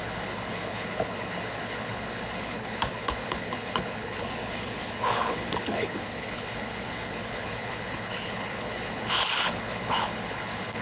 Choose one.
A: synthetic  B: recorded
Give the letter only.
A